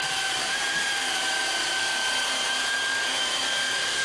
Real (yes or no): no